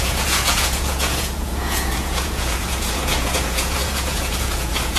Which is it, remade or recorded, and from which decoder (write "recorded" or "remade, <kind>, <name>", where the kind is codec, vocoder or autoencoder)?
remade, vocoder, Vocos